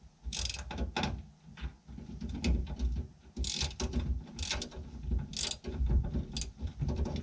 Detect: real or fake real